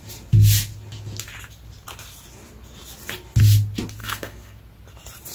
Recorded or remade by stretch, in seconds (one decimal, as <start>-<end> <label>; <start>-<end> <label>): 0.0-4.0 recorded; 4.0-4.6 remade; 4.6-5.3 recorded